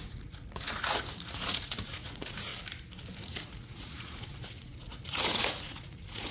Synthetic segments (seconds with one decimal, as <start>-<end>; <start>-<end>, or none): 0.0-2.5; 3.2-6.3